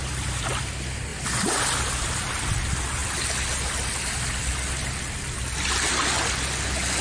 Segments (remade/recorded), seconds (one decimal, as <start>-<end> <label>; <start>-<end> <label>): 0.0-0.5 remade; 0.5-1.1 recorded; 1.1-2.4 remade; 2.4-7.0 recorded